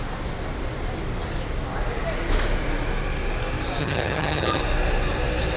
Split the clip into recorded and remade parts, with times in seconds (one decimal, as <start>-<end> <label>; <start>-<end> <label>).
0.0-3.8 recorded; 3.8-4.6 remade; 4.6-5.6 recorded